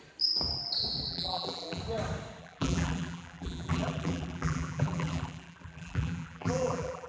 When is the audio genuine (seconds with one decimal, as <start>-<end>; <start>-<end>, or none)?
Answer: 0.0-1.1; 1.8-2.4